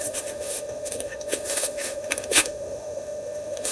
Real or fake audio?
fake